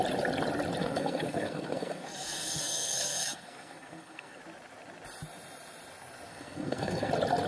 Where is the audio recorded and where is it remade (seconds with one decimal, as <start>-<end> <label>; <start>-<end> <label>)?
0.0-0.8 recorded; 0.8-4.4 remade; 4.4-6.3 recorded; 6.3-7.1 remade; 7.1-7.5 recorded